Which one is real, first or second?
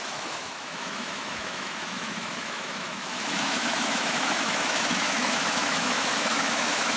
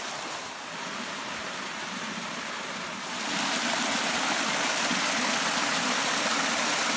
second